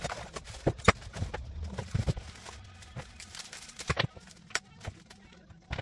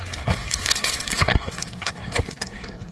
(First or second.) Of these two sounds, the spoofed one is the second